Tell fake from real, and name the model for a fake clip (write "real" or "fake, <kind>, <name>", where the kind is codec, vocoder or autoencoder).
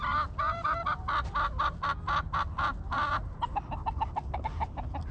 real